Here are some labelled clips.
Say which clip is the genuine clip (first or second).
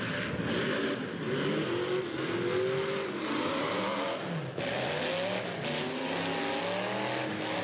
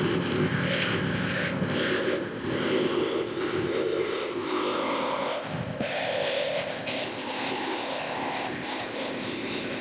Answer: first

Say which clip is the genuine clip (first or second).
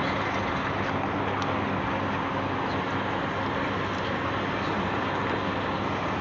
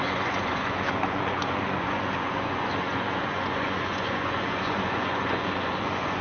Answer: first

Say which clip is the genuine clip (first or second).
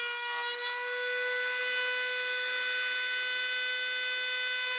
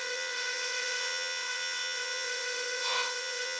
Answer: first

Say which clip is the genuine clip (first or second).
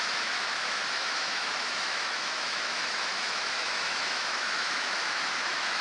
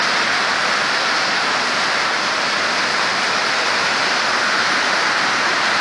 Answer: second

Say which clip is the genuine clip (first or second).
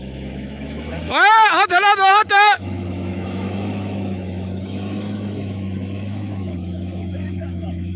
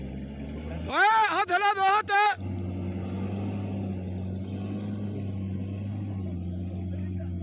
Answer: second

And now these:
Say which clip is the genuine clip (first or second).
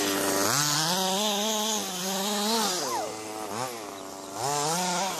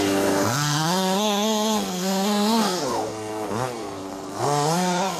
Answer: first